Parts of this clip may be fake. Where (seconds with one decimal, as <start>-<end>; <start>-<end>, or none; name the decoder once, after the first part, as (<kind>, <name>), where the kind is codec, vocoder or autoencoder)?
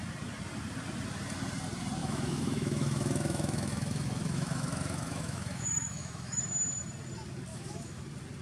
2.0-6.4 (autoencoder, DAC-VAE); 7.5-8.0